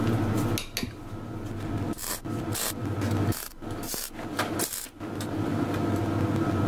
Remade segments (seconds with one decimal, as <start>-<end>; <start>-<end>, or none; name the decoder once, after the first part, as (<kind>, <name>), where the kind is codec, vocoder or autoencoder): none